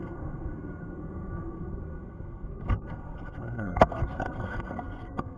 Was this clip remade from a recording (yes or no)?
yes